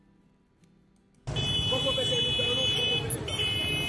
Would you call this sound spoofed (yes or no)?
no